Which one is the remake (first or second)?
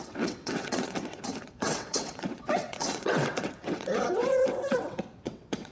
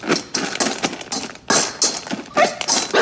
first